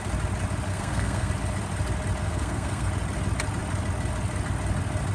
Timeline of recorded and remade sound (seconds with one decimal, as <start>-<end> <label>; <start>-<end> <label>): 0.0-0.7 recorded; 0.7-1.3 remade; 1.3-2.2 recorded; 2.2-2.9 remade; 2.9-5.1 recorded